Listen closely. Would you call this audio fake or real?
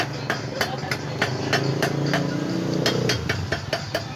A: real